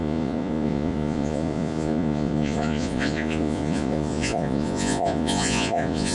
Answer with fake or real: fake